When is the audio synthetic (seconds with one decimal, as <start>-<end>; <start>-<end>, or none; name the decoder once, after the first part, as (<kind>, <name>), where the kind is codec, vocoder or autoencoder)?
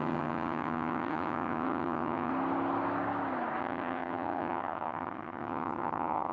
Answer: 0.0-2.3 (vocoder, HiFi-GAN); 3.6-6.3